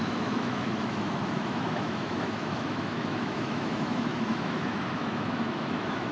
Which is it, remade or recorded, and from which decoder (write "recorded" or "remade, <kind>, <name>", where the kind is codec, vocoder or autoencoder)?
remade, autoencoder, DAC-VAE